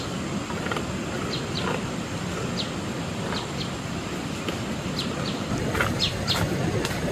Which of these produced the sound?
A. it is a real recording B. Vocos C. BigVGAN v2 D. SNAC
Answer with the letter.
A